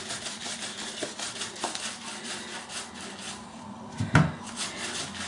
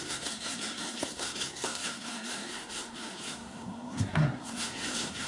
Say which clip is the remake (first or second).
second